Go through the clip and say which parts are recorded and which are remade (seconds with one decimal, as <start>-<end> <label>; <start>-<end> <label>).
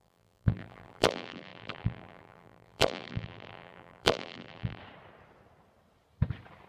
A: 0.0-4.8 remade; 4.8-6.7 recorded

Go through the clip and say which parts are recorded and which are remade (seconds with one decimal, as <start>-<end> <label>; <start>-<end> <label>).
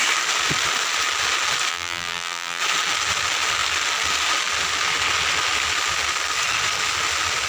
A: 0.0-1.7 recorded; 1.7-2.6 remade; 2.6-7.5 recorded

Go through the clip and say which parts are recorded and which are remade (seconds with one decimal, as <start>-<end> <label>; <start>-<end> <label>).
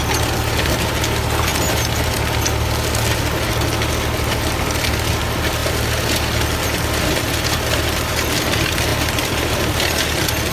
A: 0.0-8.9 recorded; 8.9-9.4 remade; 9.4-10.5 recorded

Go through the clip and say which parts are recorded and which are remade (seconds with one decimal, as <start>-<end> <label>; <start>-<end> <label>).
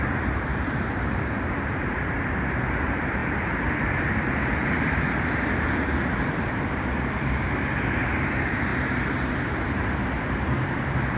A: 0.0-8.7 remade; 8.7-9.3 recorded; 9.3-11.2 remade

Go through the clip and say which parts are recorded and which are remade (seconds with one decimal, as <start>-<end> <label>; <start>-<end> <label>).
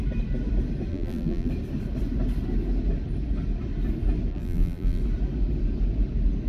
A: 0.0-0.9 recorded; 0.9-1.5 remade; 1.5-4.3 recorded; 4.3-5.0 remade; 5.0-6.5 recorded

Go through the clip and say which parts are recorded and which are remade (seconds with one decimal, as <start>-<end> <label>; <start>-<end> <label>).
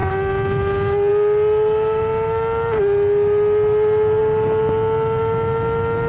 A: 0.0-6.1 recorded